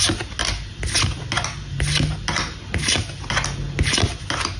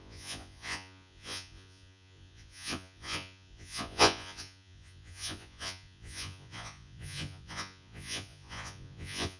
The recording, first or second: first